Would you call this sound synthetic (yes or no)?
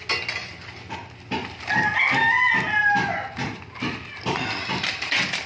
no